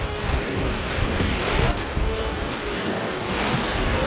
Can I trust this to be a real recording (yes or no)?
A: no